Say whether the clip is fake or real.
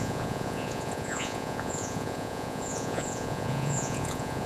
fake